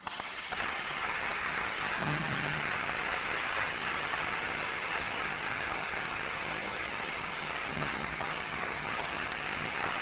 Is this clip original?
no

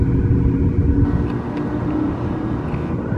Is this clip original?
yes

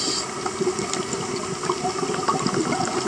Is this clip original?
yes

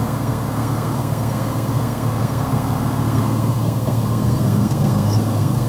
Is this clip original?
no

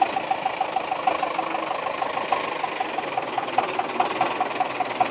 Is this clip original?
yes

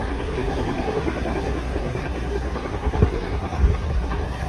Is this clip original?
no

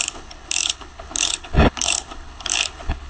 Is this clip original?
no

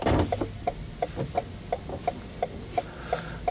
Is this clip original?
yes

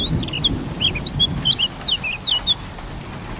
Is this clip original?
yes